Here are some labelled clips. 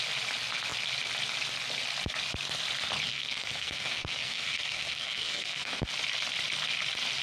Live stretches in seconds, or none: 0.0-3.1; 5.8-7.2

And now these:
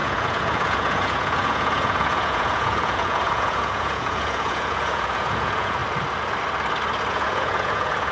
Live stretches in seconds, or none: 5.8-7.1